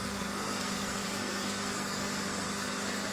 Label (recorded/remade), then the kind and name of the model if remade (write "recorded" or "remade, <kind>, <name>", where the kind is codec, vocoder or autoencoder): remade, codec, SNAC